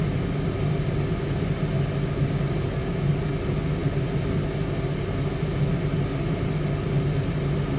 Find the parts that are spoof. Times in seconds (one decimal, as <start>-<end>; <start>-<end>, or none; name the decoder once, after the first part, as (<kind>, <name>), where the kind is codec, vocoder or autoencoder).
none

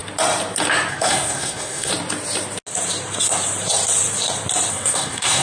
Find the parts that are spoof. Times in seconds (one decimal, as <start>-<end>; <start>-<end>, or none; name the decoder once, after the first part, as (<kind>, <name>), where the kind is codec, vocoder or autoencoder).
0.9-1.9 (codec, SNAC); 4.7-5.4